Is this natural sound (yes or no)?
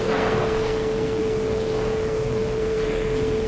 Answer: no